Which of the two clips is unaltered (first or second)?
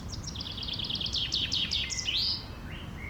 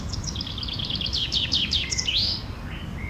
first